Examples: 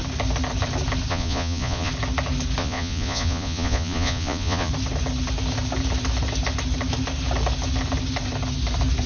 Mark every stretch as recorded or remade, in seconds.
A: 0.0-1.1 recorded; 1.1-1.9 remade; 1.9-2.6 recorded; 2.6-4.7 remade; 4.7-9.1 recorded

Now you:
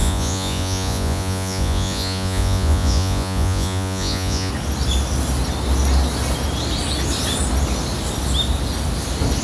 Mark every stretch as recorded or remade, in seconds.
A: 0.0-4.5 remade; 4.5-9.4 recorded

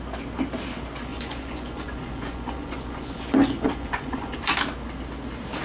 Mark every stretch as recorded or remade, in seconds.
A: 0.0-1.1 recorded; 1.1-4.5 remade; 4.5-5.6 recorded

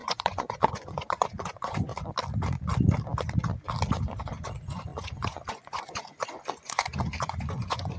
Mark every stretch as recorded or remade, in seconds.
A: 0.0-1.9 remade; 1.9-3.9 recorded; 3.9-8.0 remade

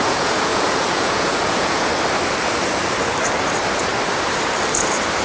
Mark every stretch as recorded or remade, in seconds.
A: 0.0-1.9 remade; 1.9-5.2 recorded

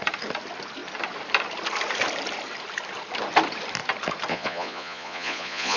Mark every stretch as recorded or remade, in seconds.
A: 0.0-4.3 recorded; 4.3-5.8 remade